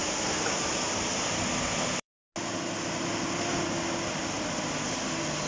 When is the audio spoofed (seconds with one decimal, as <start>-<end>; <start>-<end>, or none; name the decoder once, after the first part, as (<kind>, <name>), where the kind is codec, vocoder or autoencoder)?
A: 1.4-2.1 (vocoder, BigVGAN v2)